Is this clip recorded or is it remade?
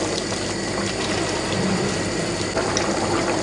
recorded